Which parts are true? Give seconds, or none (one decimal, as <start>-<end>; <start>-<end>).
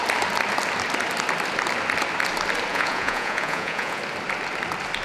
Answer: 0.0-2.7; 4.0-5.0